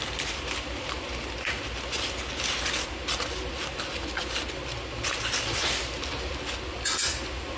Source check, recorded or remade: recorded